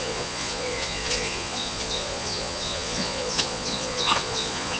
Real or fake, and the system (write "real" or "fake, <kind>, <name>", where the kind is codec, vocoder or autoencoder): fake, vocoder, Vocos